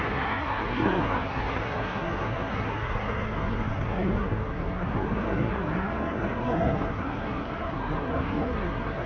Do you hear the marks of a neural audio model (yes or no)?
yes